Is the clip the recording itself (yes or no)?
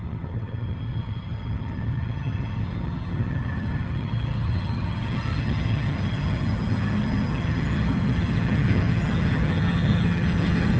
no